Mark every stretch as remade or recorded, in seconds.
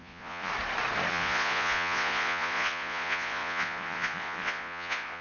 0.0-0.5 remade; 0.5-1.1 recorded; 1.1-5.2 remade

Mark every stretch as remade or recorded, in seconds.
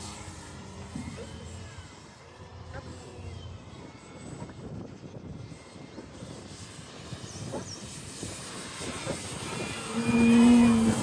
0.0-11.0 remade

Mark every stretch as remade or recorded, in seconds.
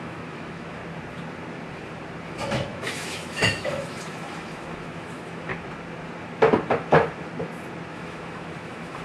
0.0-0.8 remade; 0.8-2.3 recorded; 2.3-5.5 remade; 5.5-7.9 recorded; 7.9-9.0 remade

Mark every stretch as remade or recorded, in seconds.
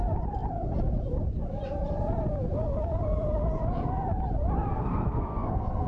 0.0-4.7 recorded; 4.7-5.9 remade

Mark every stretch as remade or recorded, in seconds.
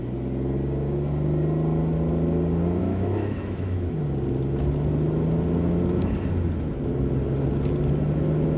0.0-2.8 recorded; 2.8-3.9 remade; 3.9-8.6 recorded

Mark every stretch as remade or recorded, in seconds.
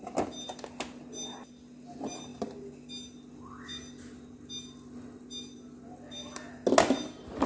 0.0-7.5 recorded